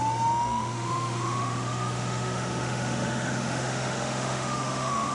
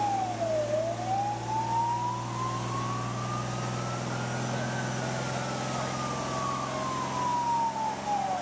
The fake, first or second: first